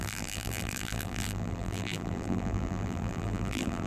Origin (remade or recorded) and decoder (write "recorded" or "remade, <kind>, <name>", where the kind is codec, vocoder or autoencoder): remade, vocoder, BigVGAN v2